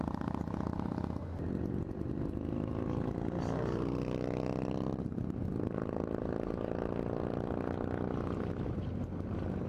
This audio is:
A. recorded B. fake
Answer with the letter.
A